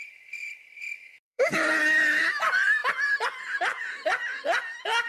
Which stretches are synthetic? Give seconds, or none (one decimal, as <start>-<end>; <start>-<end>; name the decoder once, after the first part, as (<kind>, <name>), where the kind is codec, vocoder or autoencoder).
1.0-1.5 (autoencoder, DAC-VAE)